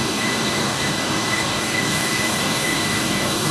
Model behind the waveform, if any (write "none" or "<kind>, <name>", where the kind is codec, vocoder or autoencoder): codec, DAC